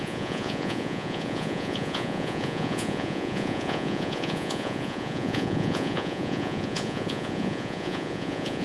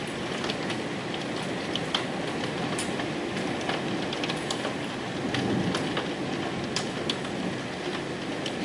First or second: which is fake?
first